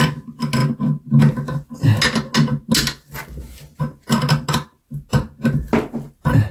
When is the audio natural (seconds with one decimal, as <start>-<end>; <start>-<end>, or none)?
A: 0.0-6.5